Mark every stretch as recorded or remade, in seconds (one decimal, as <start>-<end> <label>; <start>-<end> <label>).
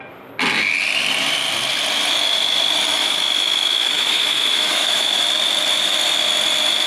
0.0-2.9 recorded; 2.9-5.2 remade; 5.2-6.9 recorded